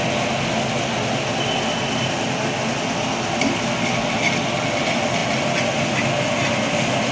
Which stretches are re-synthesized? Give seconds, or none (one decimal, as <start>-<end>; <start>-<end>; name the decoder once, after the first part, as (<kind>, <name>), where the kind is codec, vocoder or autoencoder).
none